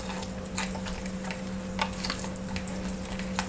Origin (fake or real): real